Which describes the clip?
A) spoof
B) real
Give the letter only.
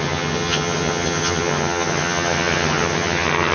A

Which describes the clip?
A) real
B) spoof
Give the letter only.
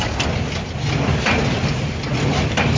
A